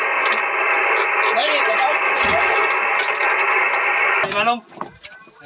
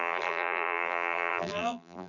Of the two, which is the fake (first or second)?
second